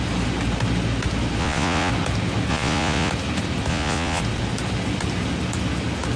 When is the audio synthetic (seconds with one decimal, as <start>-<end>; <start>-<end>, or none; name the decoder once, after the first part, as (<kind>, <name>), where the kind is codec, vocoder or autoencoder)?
1.4-1.9 (vocoder, Vocos); 2.5-3.1; 3.7-4.2